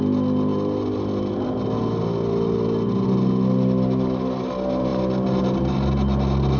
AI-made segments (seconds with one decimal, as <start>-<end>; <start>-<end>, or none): none